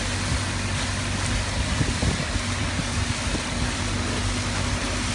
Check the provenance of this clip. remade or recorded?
recorded